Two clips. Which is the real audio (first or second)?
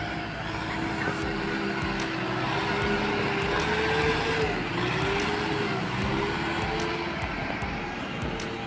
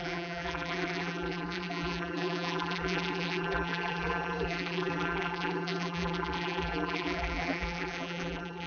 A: first